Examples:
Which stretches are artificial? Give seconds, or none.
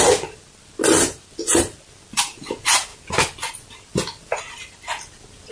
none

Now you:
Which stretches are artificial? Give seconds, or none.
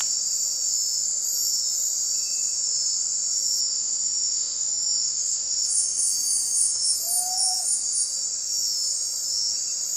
3.6-6.9 (autoencoder, DAC-VAE)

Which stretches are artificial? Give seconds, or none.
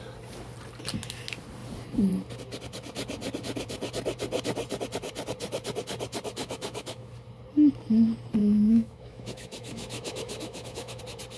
6.4-7.1 (autoencoder, DAC-VAE); 8.4-11.0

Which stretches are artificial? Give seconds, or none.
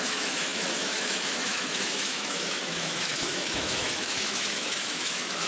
0.0-5.5 (autoencoder, DAC-VAE)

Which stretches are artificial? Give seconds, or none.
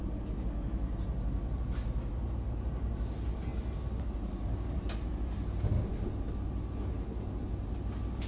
none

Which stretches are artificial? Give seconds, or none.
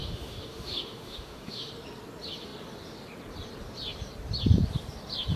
0.0-1.7 (autoencoder, DAC-VAE)